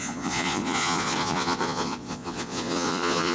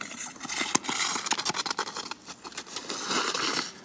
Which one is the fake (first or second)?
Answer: first